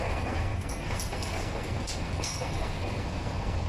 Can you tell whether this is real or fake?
fake